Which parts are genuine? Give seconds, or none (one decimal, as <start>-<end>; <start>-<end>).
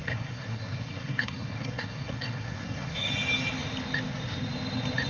3.1-5.1